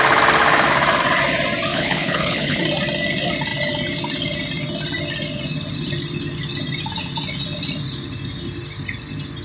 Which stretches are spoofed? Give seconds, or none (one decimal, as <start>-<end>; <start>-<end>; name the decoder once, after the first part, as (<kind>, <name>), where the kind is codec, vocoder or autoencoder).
1.7-2.6 (codec, HILCodec)